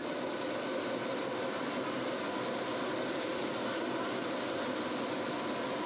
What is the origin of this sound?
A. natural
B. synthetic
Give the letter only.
A